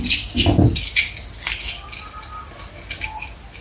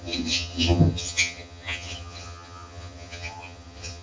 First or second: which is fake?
second